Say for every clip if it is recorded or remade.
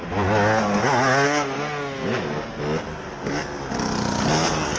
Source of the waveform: recorded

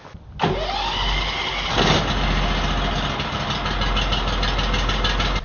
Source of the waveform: recorded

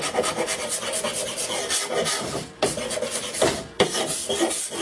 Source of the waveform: recorded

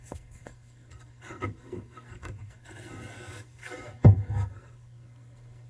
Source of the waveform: remade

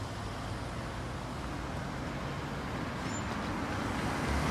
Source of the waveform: recorded